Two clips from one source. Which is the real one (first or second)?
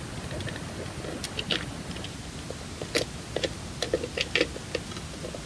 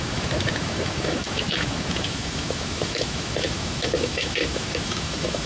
first